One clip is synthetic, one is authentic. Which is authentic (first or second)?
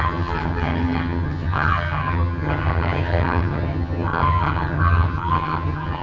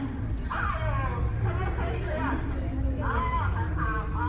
second